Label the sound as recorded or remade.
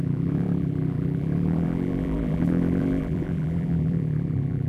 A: remade